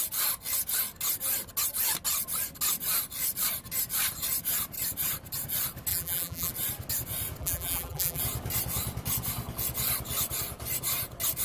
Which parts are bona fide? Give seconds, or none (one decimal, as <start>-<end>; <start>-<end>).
0.0-5.9; 6.5-7.4; 8.2-11.4